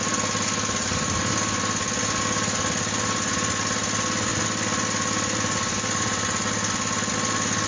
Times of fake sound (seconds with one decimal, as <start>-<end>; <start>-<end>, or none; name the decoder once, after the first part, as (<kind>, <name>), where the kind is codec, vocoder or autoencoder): none